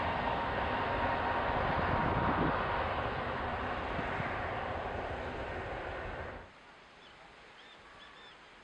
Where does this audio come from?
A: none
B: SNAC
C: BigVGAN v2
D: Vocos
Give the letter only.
A